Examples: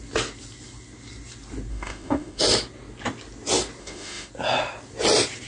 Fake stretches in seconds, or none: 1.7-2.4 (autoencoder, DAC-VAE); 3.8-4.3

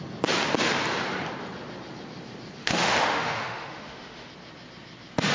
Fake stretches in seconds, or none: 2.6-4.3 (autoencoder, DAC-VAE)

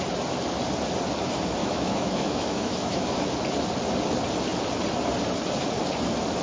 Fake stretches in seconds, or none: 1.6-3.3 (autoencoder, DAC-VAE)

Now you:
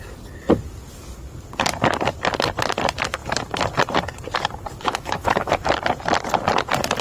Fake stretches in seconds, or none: 4.9-5.5 (autoencoder, DAC-VAE)